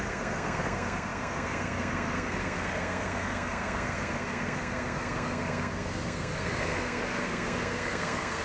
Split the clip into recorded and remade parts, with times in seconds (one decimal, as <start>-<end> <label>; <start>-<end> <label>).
0.0-8.4 remade